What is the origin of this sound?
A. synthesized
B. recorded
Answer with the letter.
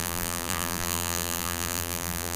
A